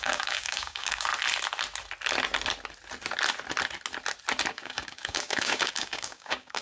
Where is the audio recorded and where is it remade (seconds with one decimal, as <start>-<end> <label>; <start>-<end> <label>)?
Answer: 0.0-1.1 remade; 1.1-4.5 recorded; 4.5-6.6 remade